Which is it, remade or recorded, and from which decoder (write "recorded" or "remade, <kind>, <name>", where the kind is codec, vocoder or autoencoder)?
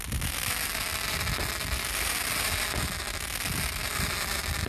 recorded